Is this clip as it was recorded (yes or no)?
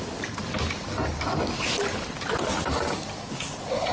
yes